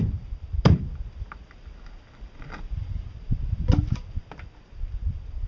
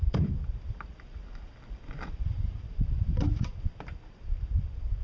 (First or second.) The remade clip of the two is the second